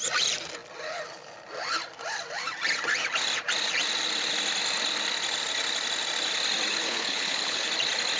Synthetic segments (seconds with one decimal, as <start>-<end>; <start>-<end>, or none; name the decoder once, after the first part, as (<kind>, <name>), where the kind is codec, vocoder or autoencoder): 6.7-7.7 (codec, HILCodec)